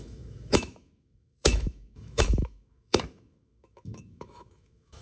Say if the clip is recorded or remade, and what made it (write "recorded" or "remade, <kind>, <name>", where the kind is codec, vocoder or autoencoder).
remade, autoencoder, DAC-VAE